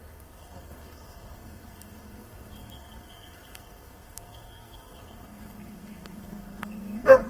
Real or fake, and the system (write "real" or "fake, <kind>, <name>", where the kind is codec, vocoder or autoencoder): fake, codec, SNAC